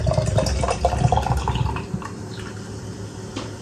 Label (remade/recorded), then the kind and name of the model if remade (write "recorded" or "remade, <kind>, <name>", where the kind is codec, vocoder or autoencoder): recorded